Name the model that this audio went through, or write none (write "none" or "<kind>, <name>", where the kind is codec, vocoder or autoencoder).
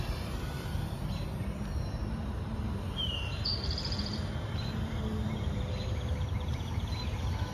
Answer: vocoder, BigVGAN v2